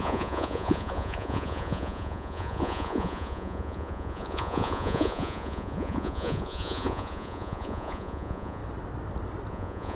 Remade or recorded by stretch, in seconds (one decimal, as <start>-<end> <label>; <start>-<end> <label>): 0.0-8.6 remade; 8.6-9.5 recorded; 9.5-10.0 remade